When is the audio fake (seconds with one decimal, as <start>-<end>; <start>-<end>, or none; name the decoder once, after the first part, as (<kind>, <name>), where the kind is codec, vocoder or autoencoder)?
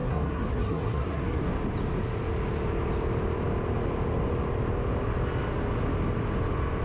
0.0-1.4 (codec, SNAC)